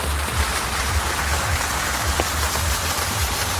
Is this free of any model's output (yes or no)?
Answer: no